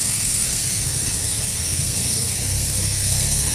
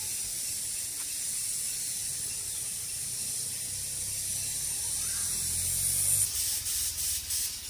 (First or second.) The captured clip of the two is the second